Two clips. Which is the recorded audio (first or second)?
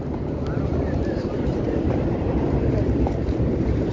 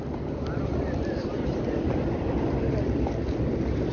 second